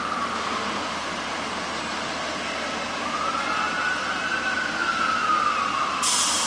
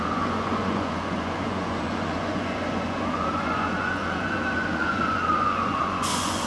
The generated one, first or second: second